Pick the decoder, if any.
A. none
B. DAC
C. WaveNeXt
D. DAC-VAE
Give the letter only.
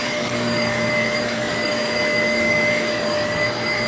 B